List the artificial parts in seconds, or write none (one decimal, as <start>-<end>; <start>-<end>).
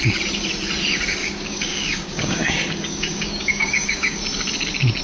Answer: 1.2-4.2